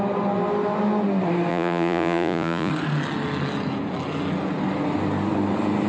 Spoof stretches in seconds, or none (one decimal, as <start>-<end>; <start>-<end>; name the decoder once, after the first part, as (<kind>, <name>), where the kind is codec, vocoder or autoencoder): 1.5-2.7 (vocoder, Vocos)

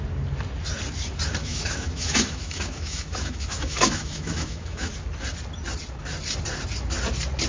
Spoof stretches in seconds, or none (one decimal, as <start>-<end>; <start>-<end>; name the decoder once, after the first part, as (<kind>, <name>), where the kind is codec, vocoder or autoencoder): 1.4-4.9 (autoencoder, DAC-VAE)

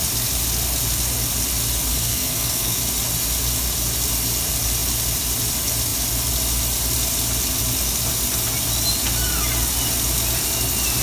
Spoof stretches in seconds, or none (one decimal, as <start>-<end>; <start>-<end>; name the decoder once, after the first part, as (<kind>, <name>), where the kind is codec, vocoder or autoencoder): 1.9-2.8 (codec, SNAC)

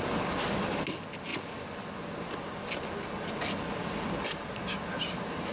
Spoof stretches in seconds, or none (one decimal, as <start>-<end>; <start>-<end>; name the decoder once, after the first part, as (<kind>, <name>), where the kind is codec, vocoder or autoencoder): none

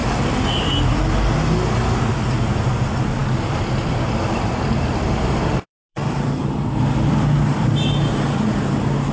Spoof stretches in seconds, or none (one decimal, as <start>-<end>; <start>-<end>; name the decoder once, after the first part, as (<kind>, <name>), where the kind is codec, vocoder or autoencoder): 3.2-7.2 (vocoder, BigVGAN v2)

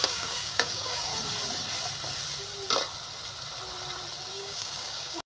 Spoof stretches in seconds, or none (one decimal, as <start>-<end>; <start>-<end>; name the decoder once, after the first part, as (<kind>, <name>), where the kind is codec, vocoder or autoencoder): 0.0-1.1 (codec, DAC); 4.3-5.3